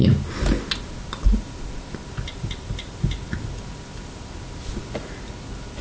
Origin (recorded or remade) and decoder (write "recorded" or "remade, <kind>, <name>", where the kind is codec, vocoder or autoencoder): recorded